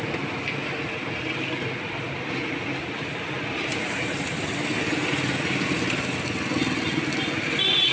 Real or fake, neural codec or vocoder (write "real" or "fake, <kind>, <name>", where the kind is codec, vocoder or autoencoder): real